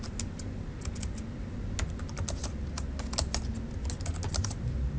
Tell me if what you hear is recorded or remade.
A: recorded